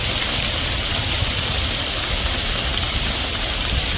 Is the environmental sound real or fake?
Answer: real